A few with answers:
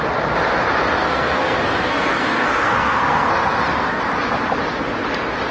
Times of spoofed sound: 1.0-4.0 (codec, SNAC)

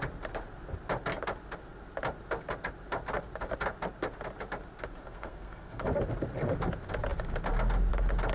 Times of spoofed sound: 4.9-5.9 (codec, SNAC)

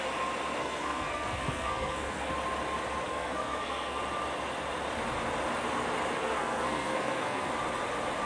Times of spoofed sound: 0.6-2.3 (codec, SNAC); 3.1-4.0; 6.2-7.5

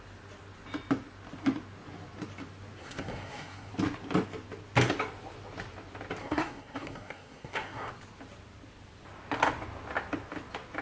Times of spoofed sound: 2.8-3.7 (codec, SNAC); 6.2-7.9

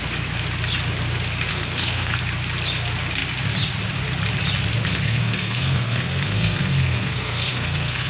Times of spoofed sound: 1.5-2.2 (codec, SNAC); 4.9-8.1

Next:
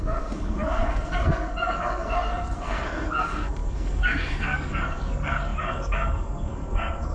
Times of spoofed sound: 0.0-7.1 (codec, SNAC)